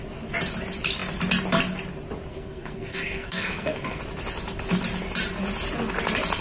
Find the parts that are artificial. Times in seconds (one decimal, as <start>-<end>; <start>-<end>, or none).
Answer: 2.3-4.0